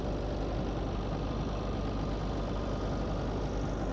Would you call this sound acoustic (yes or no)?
yes